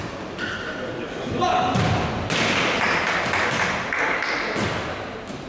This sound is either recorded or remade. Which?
recorded